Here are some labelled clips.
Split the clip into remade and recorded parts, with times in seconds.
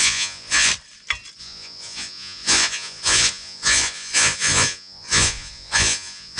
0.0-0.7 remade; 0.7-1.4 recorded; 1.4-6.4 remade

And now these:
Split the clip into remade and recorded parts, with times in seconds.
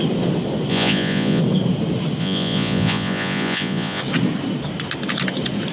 0.0-0.7 recorded; 0.7-1.4 remade; 1.4-2.2 recorded; 2.2-4.0 remade; 4.0-5.7 recorded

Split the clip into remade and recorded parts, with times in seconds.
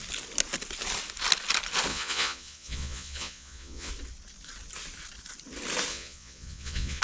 0.0-1.9 recorded; 1.9-3.9 remade; 3.9-5.9 recorded; 5.9-7.0 remade